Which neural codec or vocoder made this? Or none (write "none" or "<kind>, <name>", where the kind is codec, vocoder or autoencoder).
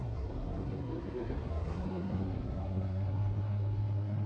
codec, SNAC